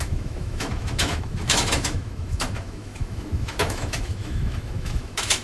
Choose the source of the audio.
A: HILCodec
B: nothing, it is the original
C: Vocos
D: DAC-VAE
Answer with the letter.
D